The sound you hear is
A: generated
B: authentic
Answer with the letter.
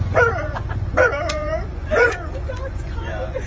A